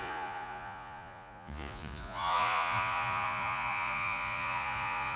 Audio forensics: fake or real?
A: fake